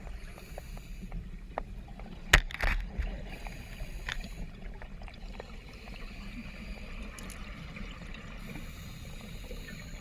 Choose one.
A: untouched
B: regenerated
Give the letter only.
A